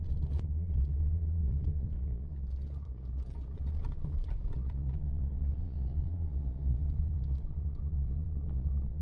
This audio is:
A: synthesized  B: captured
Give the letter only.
A